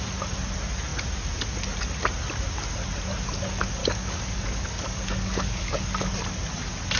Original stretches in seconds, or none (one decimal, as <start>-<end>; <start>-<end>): 0.0-3.8; 6.1-7.0